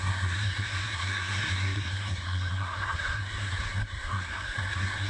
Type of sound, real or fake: fake